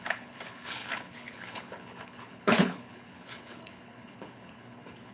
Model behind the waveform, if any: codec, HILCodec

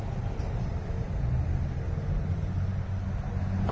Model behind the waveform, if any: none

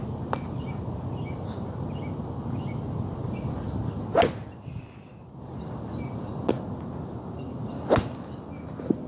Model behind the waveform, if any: none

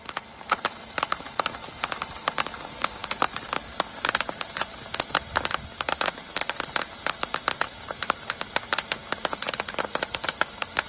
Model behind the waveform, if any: none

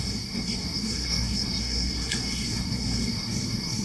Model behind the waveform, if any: codec, SNAC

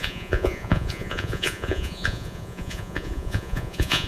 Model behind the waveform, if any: vocoder, Vocos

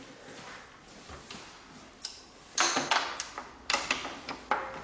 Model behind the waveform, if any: none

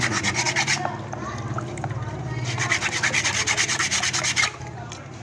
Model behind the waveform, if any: none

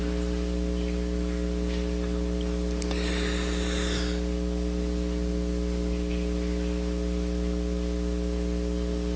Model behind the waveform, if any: none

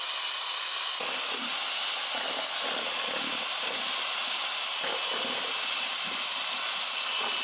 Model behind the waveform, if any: none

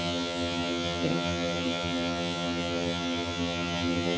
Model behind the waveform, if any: vocoder, HiFi-GAN